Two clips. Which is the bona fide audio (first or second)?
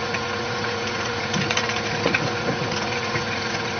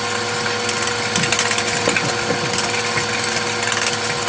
second